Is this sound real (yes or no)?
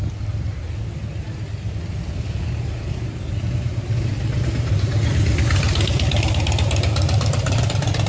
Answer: yes